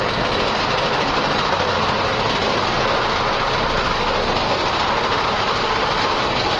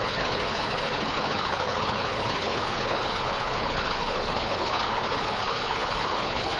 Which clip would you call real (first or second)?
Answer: first